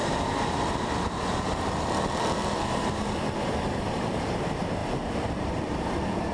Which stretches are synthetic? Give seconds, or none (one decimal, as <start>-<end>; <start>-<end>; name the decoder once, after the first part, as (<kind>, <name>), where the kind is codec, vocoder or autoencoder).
3.8-6.3 (vocoder, BigVGAN v2)